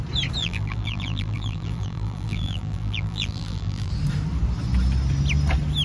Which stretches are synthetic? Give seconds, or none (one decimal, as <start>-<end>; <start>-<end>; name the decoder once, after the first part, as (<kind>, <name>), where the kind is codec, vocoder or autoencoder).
0.4-3.9 (vocoder, BigVGAN v2)